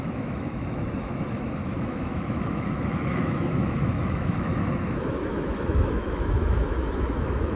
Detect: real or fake fake